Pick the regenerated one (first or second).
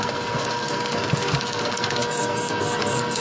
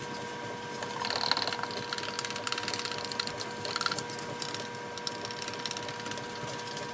first